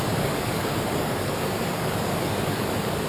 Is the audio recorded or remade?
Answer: remade